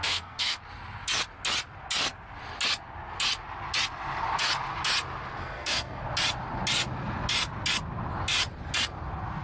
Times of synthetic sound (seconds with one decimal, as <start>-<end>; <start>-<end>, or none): 0.0-0.6; 5.4-6.0